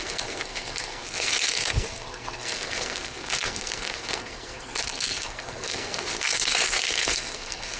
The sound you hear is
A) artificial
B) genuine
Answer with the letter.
A